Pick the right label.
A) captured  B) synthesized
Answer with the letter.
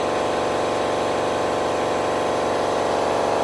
A